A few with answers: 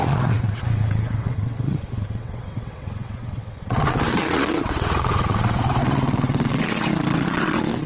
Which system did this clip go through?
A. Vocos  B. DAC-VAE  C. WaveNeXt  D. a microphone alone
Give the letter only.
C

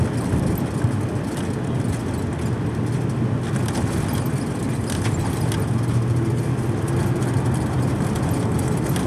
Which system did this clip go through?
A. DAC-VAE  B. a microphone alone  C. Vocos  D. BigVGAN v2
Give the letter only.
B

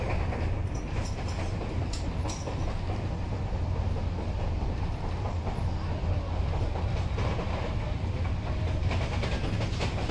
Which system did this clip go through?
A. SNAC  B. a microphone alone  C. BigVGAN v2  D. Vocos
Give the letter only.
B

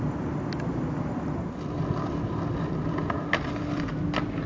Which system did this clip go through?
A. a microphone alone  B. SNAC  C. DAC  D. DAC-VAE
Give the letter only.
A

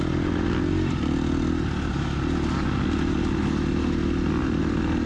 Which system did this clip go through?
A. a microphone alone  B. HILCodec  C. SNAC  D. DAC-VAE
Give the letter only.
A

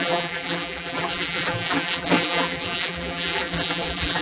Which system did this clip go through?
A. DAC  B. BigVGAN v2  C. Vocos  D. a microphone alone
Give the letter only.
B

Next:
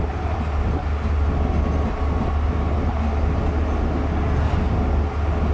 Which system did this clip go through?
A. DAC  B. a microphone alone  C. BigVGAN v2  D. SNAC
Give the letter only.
B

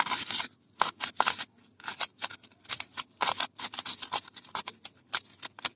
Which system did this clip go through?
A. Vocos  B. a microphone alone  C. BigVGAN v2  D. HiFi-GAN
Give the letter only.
B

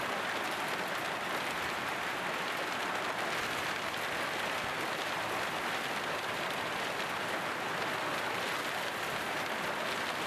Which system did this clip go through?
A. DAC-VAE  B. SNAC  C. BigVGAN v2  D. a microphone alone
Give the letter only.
D